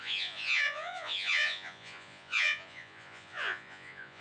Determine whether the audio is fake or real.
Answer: fake